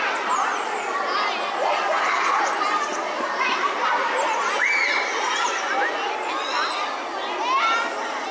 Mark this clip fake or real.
real